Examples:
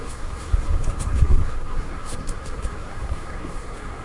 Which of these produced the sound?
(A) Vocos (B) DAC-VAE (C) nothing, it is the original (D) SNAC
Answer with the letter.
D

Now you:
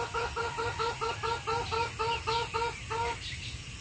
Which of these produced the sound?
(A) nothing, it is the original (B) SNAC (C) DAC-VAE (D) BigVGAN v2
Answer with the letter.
A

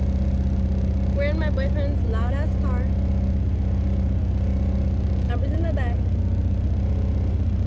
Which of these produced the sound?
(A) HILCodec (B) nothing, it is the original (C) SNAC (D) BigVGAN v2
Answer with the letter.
B